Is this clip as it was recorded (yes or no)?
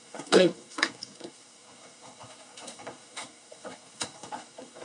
no